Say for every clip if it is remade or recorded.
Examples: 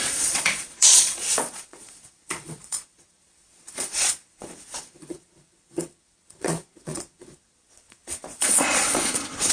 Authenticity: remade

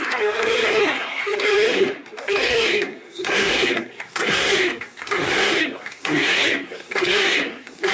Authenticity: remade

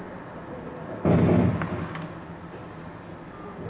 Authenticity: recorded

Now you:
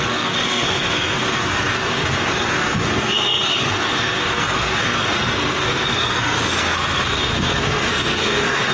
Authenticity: remade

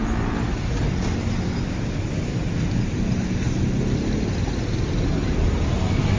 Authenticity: recorded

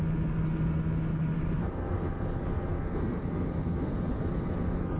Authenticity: recorded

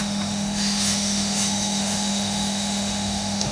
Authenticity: remade